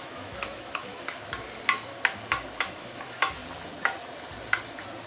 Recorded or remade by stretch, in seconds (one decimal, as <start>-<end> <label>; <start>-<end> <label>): 0.0-0.9 remade; 0.9-2.6 recorded; 2.6-3.4 remade; 3.4-5.1 recorded